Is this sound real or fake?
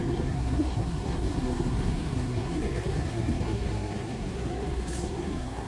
fake